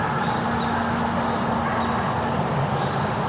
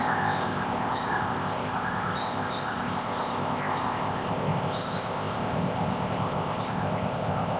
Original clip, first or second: first